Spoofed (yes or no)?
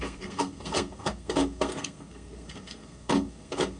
yes